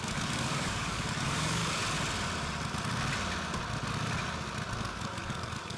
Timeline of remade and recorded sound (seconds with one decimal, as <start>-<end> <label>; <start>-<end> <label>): 0.0-1.6 remade; 1.6-4.8 recorded; 4.8-5.8 remade